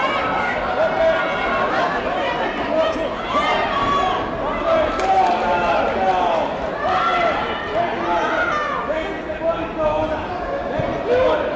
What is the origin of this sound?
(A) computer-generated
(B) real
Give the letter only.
B